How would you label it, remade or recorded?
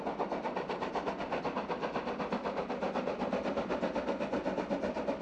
recorded